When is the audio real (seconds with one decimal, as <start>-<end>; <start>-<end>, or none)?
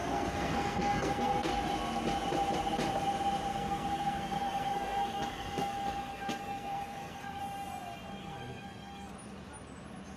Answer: 1.5-3.5; 7.4-8.2; 9.1-10.2